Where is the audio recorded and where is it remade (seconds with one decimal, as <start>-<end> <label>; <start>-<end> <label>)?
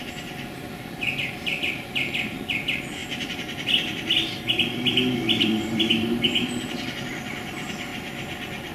0.0-3.0 recorded; 3.0-6.5 remade; 6.5-8.7 recorded